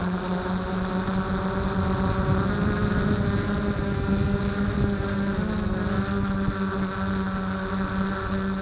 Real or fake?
real